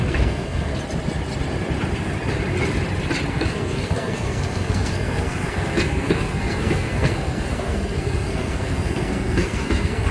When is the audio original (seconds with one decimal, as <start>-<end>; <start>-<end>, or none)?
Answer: 0.7-3.3